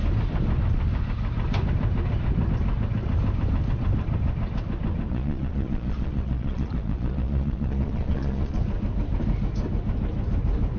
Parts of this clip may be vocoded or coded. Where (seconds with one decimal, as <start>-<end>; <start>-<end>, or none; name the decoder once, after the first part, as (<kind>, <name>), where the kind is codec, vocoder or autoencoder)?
5.1-8.6 (vocoder, Vocos)